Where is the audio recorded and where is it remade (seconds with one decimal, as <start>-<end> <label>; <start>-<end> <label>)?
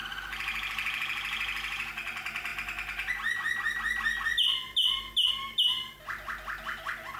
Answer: 0.0-7.2 recorded